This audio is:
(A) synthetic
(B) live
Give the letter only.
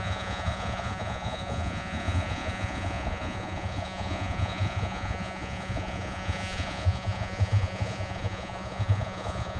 A